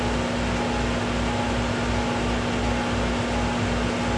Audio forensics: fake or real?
real